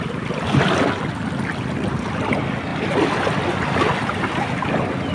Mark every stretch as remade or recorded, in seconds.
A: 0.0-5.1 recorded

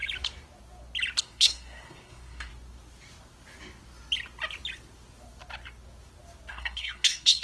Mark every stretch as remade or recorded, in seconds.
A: 0.0-1.2 recorded; 1.2-2.5 remade; 2.5-6.5 recorded; 6.5-7.4 remade

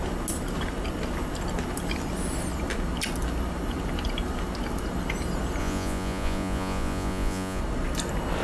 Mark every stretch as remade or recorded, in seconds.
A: 0.0-5.6 recorded; 5.6-7.6 remade; 7.6-8.4 recorded

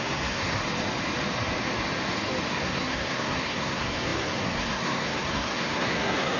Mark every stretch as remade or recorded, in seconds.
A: 0.0-0.6 remade; 0.6-2.5 recorded; 2.5-6.4 remade